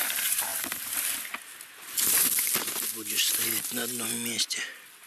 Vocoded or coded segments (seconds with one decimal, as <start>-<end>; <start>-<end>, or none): none